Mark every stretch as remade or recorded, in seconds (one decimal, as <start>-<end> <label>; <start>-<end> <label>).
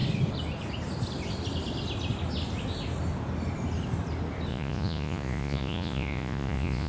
0.0-4.5 recorded; 4.5-6.9 remade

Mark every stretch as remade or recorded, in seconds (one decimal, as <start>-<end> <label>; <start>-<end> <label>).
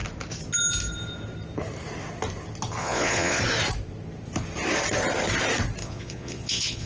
0.0-2.8 recorded; 2.8-3.4 remade; 3.4-5.8 recorded; 5.8-6.9 remade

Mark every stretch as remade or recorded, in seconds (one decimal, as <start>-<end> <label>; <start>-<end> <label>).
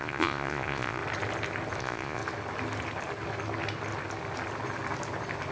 0.0-1.0 remade; 1.0-1.8 recorded; 1.8-2.2 remade; 2.2-5.5 recorded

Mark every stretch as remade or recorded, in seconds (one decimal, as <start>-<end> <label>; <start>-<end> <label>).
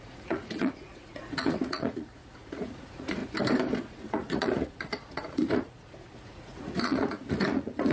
0.0-3.2 remade; 3.2-3.8 recorded; 3.8-7.9 remade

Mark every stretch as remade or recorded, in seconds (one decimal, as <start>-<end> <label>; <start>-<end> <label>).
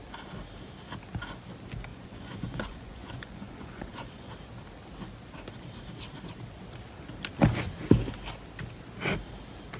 0.0-1.9 recorded; 1.9-4.3 remade; 4.3-9.8 recorded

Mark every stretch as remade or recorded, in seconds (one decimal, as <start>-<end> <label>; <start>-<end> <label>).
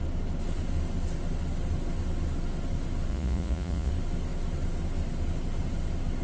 0.0-3.1 recorded; 3.1-3.9 remade; 3.9-6.2 recorded